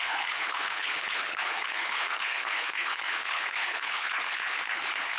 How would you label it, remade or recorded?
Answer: remade